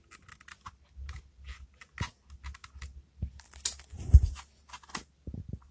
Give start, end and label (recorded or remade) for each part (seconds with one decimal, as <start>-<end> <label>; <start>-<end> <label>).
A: 0.0-5.7 recorded